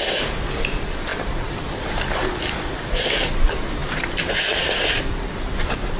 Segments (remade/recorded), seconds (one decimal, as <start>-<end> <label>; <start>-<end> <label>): 0.0-1.1 recorded; 1.1-2.8 remade; 2.8-6.0 recorded